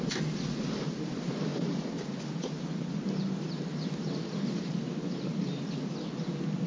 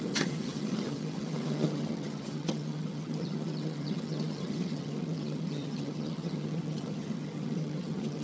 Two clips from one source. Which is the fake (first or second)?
second